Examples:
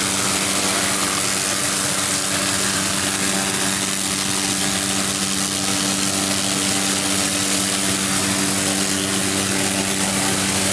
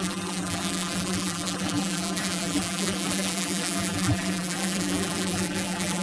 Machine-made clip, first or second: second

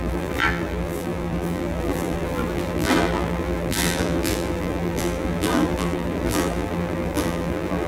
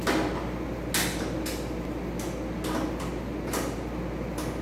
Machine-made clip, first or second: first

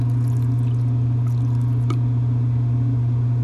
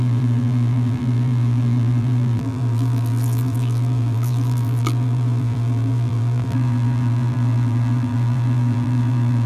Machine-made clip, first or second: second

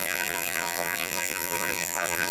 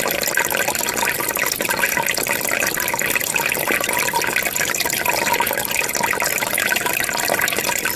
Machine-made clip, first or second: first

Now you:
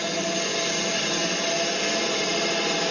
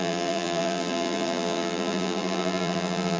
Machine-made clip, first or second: second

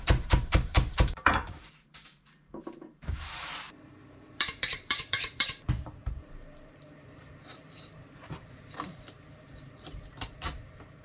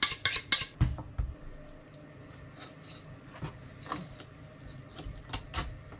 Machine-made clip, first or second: first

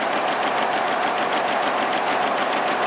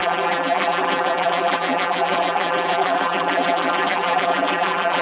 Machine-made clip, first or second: second